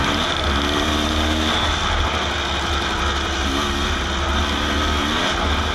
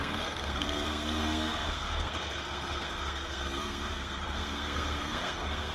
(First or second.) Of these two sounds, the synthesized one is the second